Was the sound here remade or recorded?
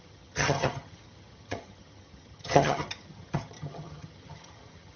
remade